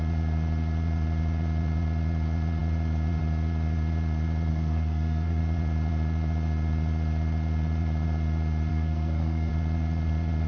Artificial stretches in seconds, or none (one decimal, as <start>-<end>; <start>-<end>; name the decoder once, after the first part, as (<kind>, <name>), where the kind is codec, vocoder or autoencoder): 4.5-5.4 (codec, SNAC); 8.7-9.5